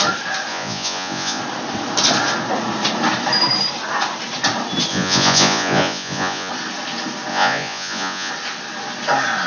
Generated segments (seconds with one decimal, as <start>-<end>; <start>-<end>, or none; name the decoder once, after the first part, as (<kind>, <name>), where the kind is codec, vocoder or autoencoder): 0.5-1.4 (vocoder, Vocos); 4.9-6.5; 7.3-8.3